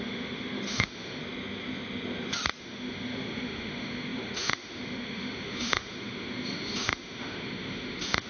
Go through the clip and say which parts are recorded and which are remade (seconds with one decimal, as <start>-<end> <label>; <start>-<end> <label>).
0.0-1.2 remade; 1.2-2.6 recorded; 2.6-8.3 remade